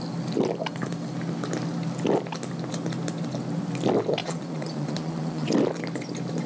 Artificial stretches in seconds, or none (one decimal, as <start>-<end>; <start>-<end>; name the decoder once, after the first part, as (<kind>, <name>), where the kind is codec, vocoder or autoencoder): 4.2-5.5 (vocoder, Vocos)